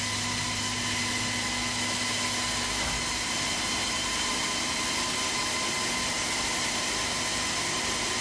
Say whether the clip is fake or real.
real